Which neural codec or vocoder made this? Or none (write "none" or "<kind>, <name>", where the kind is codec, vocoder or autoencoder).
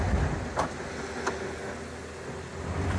none